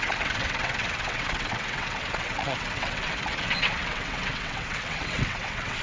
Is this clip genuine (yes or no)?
no